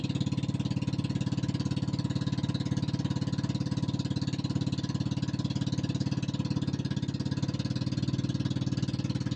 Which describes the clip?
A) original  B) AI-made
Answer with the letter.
A